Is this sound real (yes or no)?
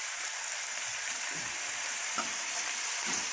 no